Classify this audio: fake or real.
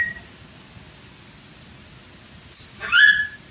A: real